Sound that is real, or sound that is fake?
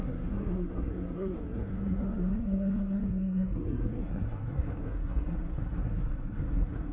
fake